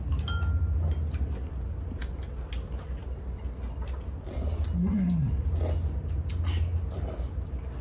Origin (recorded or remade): recorded